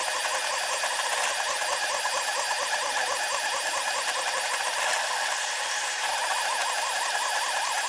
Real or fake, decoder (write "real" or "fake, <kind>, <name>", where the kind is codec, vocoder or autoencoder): real